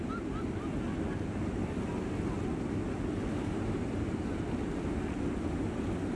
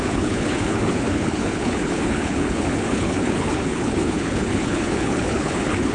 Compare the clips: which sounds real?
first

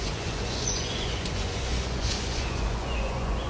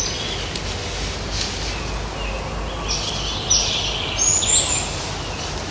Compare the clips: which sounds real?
second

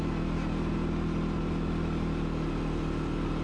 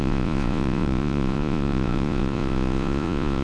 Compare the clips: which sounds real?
first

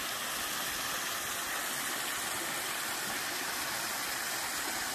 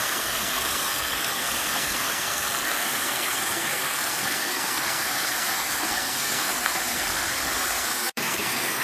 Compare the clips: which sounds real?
first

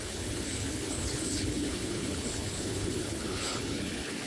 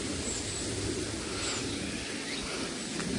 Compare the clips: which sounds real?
second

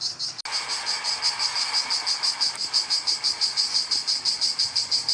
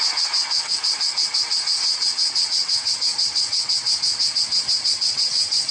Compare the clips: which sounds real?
first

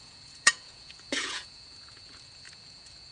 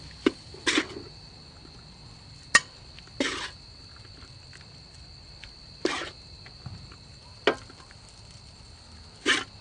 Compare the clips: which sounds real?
second